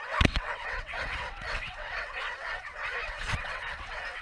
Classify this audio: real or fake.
fake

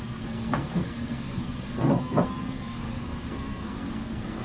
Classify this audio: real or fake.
fake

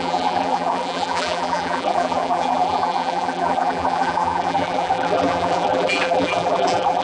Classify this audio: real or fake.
fake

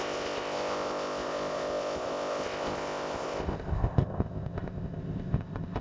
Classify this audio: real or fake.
fake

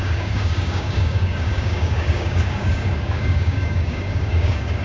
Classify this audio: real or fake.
fake